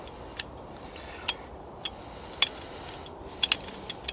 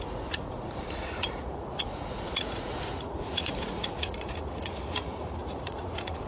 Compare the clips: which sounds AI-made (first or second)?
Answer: second